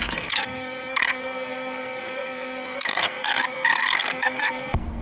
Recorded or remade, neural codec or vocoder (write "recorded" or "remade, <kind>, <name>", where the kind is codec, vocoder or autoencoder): remade, codec, SNAC